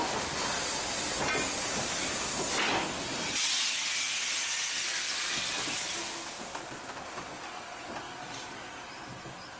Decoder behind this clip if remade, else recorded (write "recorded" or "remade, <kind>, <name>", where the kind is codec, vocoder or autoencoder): recorded